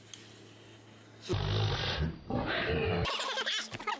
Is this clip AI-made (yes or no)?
no